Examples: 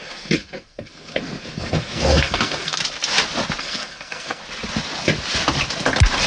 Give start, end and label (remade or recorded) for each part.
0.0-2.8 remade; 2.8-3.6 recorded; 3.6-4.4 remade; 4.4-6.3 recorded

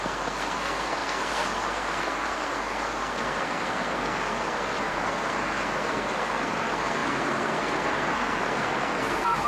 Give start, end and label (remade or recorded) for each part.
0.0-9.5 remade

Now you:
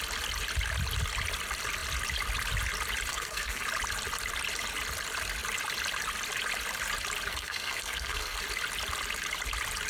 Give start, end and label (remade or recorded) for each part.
0.0-3.1 recorded; 3.1-3.6 remade; 3.6-7.3 recorded; 7.3-8.4 remade; 8.4-9.9 recorded

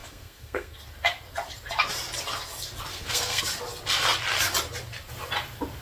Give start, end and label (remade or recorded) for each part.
0.0-0.8 remade; 0.8-2.9 recorded; 2.9-3.4 remade; 3.4-5.8 recorded

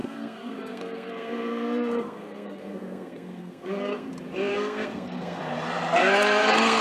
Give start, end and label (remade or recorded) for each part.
0.0-4.1 remade; 4.1-4.5 recorded; 4.5-5.4 remade; 5.4-6.0 recorded; 6.0-6.8 remade

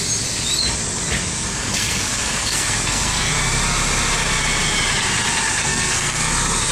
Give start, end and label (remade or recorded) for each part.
0.0-1.2 recorded; 1.2-3.3 remade; 3.3-5.6 recorded; 5.6-6.3 remade; 6.3-6.7 recorded

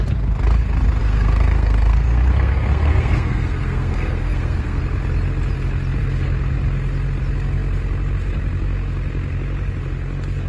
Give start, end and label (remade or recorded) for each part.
0.0-1.0 recorded; 1.0-4.8 remade; 4.8-10.5 recorded

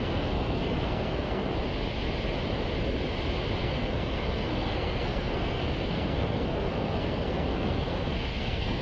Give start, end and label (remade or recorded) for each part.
0.0-1.4 remade; 1.4-3.6 recorded; 3.6-8.8 remade